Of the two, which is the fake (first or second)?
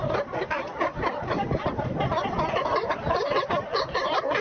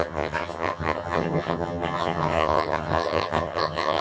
second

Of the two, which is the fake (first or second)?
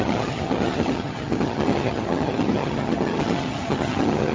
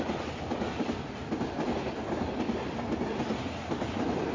first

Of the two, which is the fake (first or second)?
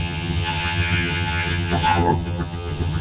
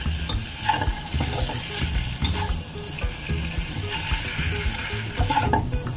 first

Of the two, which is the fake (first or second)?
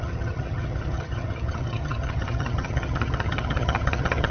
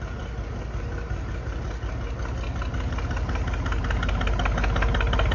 first